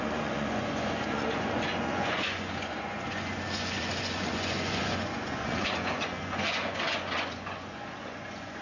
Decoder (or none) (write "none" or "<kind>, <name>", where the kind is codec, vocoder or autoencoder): vocoder, Vocos